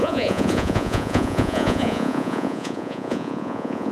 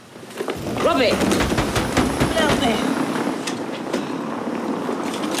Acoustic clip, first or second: second